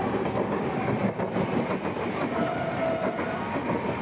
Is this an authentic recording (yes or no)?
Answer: yes